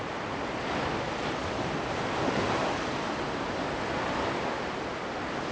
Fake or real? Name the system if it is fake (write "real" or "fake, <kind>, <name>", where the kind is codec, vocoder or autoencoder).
real